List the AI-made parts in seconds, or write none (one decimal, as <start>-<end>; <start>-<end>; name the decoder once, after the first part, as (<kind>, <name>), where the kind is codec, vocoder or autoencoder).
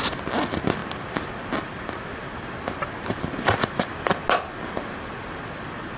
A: none